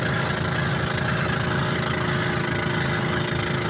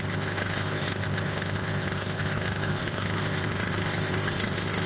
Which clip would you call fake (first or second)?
second